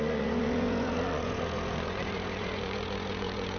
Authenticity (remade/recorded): remade